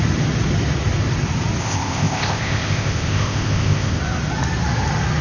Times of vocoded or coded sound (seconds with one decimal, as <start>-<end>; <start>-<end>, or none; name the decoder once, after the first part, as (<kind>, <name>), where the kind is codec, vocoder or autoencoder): 1.6-4.0 (codec, ZipCodec)